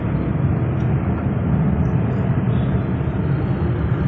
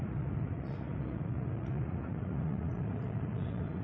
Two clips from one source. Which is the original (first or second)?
first